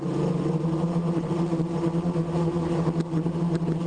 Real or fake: real